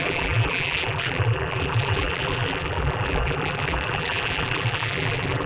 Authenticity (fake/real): fake